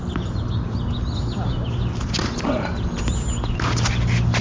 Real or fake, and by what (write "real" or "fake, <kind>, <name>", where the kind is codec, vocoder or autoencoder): real